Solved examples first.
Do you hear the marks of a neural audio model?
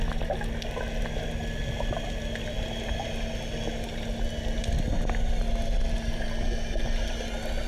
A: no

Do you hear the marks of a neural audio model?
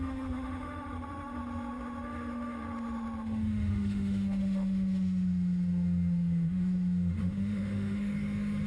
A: yes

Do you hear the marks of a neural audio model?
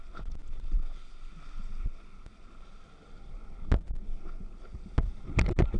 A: no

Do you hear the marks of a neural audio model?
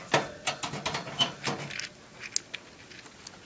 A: no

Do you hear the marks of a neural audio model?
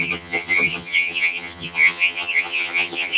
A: yes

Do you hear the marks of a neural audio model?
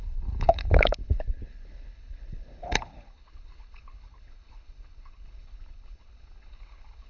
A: yes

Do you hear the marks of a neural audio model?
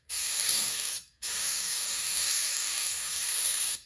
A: yes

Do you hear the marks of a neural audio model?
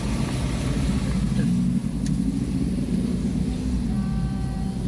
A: no